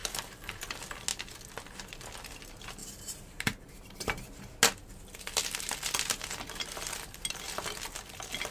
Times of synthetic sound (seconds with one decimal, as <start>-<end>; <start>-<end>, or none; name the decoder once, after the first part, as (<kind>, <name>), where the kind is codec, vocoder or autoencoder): 0.0-0.7 (vocoder, BigVGAN v2); 2.8-3.7